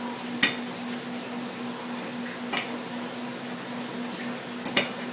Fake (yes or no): no